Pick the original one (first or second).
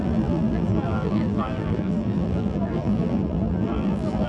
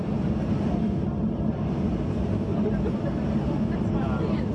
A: second